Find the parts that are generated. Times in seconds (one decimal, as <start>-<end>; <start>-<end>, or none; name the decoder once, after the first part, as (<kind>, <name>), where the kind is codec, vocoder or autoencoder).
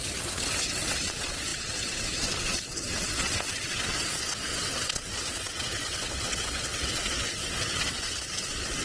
0.0-8.8 (vocoder, WaveNeXt)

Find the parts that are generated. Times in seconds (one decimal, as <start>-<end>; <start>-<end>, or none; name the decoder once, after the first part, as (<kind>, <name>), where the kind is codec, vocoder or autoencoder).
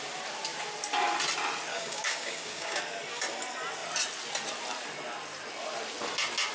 1.7-2.8 (codec, DAC)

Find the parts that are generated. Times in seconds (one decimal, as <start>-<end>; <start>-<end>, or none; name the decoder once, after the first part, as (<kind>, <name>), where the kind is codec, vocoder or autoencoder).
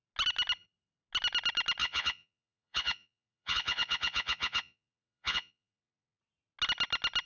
1.8-6.2 (vocoder, Vocos)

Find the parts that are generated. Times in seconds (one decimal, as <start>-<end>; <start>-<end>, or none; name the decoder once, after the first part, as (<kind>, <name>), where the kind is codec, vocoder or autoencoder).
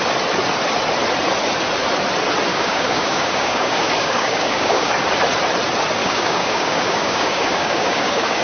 2.5-4.9 (codec, DAC); 6.0-8.4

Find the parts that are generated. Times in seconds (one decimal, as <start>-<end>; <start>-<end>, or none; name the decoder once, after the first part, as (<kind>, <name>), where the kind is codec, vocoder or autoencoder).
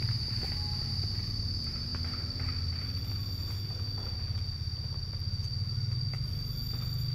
none